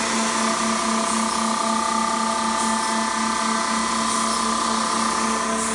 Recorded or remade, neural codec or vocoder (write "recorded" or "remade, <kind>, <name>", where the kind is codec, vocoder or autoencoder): recorded